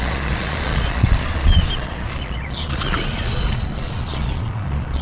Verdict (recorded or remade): remade